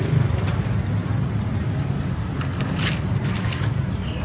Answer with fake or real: real